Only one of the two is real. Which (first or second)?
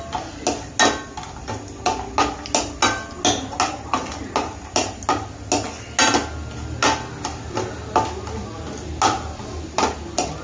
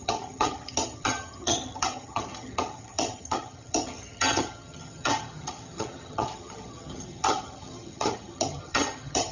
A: first